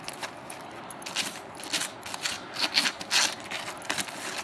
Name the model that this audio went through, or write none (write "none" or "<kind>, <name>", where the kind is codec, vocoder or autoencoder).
none